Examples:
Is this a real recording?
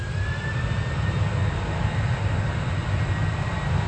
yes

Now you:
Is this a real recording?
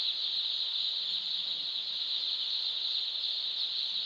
yes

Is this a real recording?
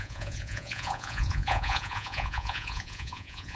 no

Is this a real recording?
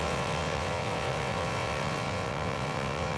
no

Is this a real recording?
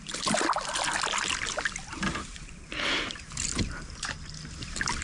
yes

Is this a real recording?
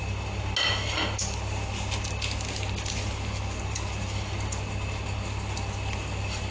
yes